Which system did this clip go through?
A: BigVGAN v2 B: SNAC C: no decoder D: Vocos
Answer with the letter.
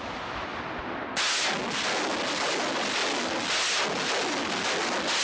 C